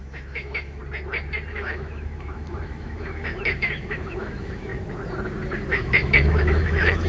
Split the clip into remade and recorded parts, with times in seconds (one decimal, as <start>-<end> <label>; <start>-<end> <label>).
0.0-0.8 remade; 0.8-1.5 recorded; 1.5-4.7 remade; 4.7-5.7 recorded; 5.7-7.1 remade